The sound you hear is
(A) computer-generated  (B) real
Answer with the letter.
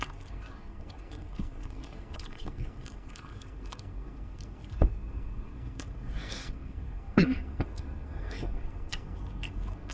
A